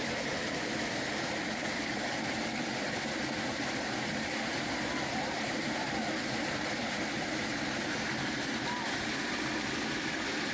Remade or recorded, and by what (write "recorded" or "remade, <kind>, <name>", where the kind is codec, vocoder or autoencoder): remade, vocoder, BigVGAN v2